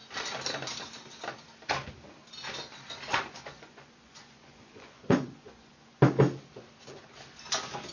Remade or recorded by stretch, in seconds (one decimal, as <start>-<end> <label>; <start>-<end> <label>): 0.0-3.1 recorded; 3.1-6.0 remade; 6.0-7.9 recorded